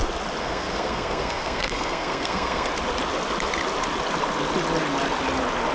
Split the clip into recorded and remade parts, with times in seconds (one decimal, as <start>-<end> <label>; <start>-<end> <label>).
0.0-0.4 recorded; 0.4-2.7 remade; 2.7-5.7 recorded

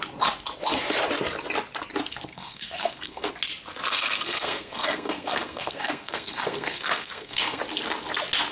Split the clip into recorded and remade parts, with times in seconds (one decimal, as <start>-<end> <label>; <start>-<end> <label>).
0.0-2.3 recorded; 2.3-3.3 remade; 3.3-3.9 recorded; 3.9-7.6 remade; 7.6-8.5 recorded

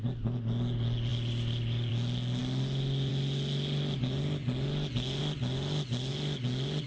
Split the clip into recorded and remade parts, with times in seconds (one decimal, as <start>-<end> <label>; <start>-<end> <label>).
0.0-1.1 recorded; 1.1-1.9 remade; 1.9-6.9 recorded